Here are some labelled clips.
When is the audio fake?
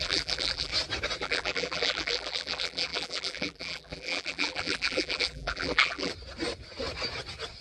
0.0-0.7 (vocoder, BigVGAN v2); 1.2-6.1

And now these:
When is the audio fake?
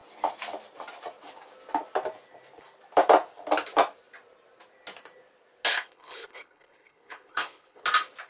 5.7-7.8 (codec, HILCodec)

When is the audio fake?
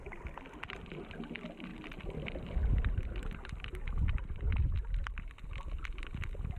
none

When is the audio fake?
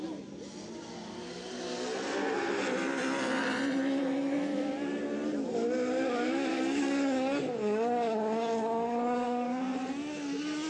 6.5-9.6 (codec, DAC)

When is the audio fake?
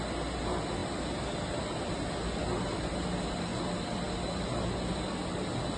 none